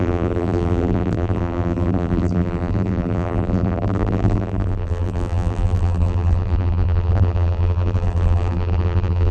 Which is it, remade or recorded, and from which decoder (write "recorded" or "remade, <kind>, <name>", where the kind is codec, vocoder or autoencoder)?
remade, vocoder, BigVGAN v2